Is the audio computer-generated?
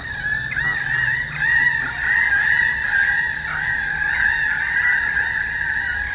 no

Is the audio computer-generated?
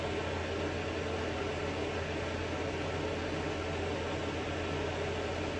no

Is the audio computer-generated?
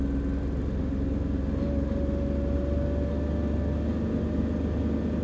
no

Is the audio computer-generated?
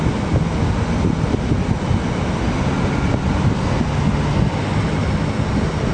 no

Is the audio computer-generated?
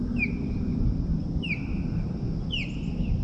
no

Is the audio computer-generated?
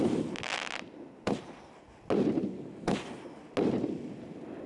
no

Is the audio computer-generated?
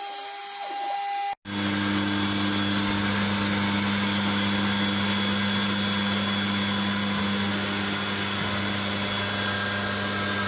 no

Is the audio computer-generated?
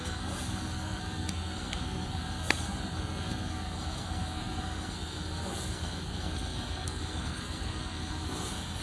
yes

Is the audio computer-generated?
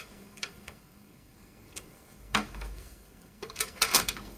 yes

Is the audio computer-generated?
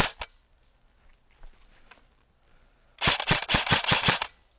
no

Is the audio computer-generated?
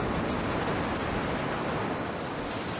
no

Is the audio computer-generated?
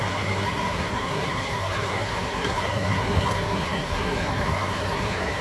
yes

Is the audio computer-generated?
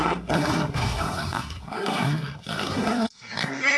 yes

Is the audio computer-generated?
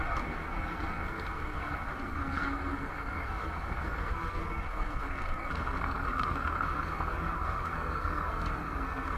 yes